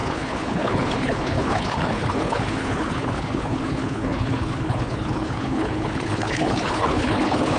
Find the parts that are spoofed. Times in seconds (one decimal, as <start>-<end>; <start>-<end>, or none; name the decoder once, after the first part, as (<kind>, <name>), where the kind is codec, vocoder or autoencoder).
0.0-7.6 (codec, HILCodec)